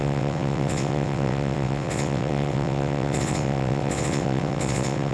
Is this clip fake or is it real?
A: fake